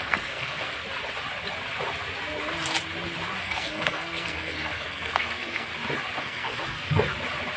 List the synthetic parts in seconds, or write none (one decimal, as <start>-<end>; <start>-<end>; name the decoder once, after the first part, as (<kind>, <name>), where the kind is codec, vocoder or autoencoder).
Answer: 0.0-0.8 (codec, SNAC); 3.4-5.7; 6.2-7.1